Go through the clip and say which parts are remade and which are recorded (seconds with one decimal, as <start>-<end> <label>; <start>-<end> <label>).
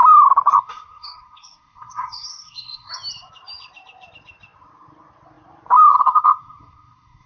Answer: 0.0-0.5 recorded; 0.5-2.9 remade; 2.9-5.9 recorded; 5.9-7.3 remade